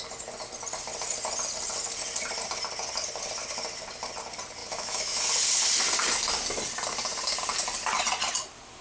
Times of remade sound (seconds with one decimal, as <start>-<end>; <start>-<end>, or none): 4.6-5.2